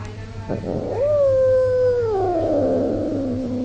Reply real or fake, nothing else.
real